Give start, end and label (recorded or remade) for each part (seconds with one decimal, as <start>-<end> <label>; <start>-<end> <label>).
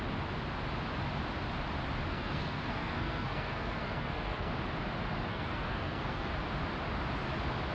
0.0-2.1 recorded; 2.1-4.5 remade; 4.5-5.3 recorded; 5.3-6.3 remade; 6.3-7.7 recorded